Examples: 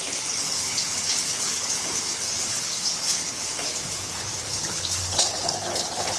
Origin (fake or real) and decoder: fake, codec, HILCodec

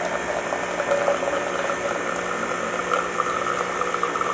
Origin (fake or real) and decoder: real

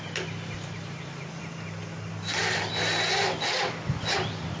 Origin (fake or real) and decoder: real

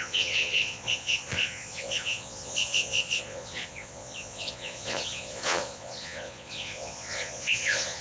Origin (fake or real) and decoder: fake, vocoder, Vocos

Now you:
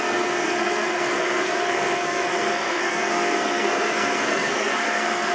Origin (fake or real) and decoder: fake, codec, SNAC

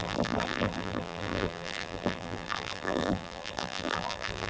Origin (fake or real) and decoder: fake, vocoder, BigVGAN v2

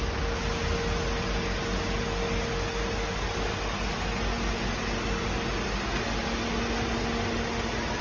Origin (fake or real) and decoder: real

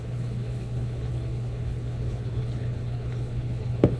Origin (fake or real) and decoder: fake, codec, HILCodec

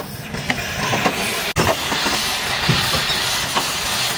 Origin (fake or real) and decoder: real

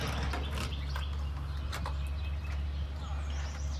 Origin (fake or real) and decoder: real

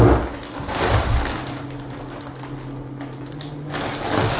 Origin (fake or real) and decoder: real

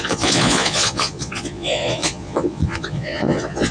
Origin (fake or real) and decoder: fake, vocoder, Vocos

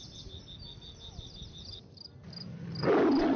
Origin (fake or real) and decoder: real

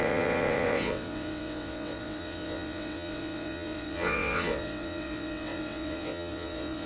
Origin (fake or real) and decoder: fake, vocoder, WaveNeXt